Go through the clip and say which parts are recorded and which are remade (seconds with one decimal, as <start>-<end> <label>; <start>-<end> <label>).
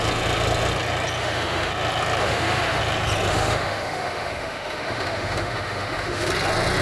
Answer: 0.0-1.2 recorded; 1.2-1.7 remade; 1.7-2.2 recorded; 2.2-2.8 remade; 2.8-3.3 recorded; 3.3-6.3 remade; 6.3-6.8 recorded